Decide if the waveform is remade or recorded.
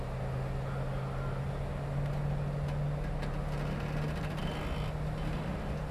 recorded